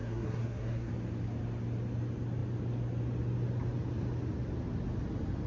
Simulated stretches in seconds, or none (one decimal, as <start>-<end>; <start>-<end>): 0.0-0.9